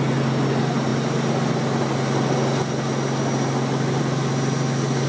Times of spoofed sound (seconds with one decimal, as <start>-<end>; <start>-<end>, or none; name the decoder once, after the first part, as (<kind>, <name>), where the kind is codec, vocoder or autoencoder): none